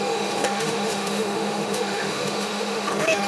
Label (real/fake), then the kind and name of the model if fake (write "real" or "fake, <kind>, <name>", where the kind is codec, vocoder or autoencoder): fake, autoencoder, DAC-VAE